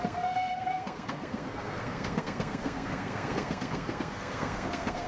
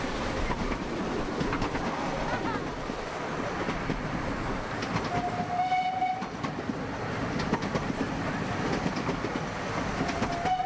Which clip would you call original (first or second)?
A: second